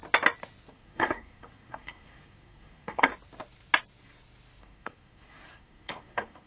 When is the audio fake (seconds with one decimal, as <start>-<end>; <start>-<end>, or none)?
0.7-3.1; 4.6-6.5